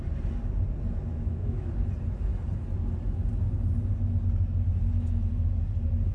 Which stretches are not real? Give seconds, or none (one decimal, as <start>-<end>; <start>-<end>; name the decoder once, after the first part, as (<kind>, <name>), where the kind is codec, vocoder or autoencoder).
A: 1.1-1.7 (autoencoder, DAC-VAE)